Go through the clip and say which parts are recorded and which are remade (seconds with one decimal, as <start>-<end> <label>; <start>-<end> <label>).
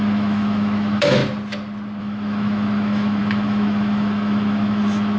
0.0-1.2 remade; 1.2-2.0 recorded; 2.0-5.2 remade